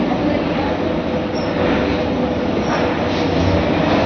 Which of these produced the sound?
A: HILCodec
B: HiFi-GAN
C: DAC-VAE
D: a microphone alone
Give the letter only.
D